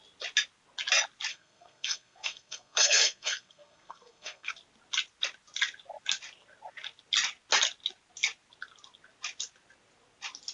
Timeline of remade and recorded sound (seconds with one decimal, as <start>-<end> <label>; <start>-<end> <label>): 0.0-1.3 recorded; 1.3-4.5 remade; 4.5-10.5 recorded

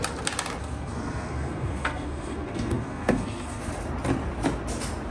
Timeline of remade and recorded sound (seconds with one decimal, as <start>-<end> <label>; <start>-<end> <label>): 0.0-0.6 recorded; 0.6-3.7 remade; 3.7-5.1 recorded